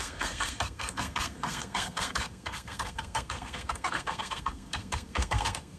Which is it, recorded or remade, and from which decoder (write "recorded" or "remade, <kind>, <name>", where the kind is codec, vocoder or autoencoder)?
remade, codec, SNAC